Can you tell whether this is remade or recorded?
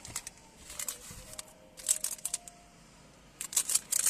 recorded